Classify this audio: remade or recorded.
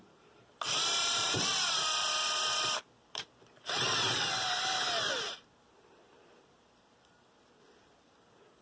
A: remade